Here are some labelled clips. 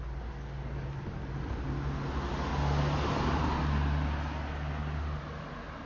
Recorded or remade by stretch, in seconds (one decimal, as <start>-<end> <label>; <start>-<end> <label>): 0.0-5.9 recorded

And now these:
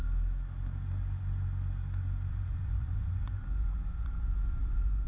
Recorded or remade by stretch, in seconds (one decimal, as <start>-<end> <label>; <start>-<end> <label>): 0.0-2.3 recorded; 2.3-5.1 remade

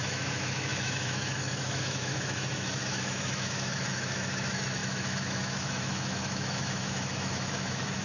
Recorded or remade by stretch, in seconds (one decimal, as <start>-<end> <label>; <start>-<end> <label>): 0.0-8.0 remade

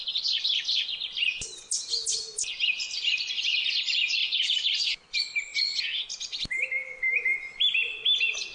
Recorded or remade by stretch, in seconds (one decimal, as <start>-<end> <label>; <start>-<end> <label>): 0.0-8.5 recorded

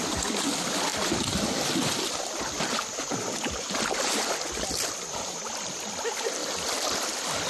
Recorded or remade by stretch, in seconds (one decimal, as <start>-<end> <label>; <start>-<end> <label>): 0.0-0.9 recorded; 0.9-5.0 remade; 5.0-7.5 recorded

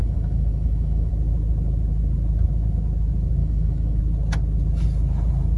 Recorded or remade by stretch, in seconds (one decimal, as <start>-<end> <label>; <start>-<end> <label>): 0.0-1.1 remade; 1.1-3.4 recorded; 3.4-4.0 remade; 4.0-5.6 recorded

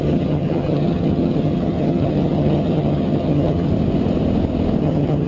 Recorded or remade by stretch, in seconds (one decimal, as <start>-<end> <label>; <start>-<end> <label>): 0.0-3.7 remade; 3.7-4.8 recorded; 4.8-5.3 remade